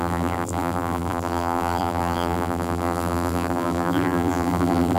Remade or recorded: remade